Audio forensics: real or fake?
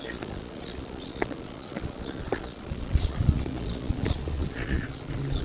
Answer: fake